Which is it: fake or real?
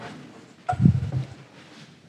real